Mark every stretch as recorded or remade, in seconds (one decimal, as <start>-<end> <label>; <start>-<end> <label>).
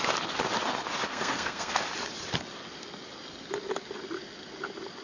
0.0-1.1 recorded; 1.1-1.8 remade; 1.8-5.0 recorded